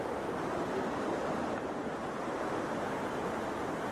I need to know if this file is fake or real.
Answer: real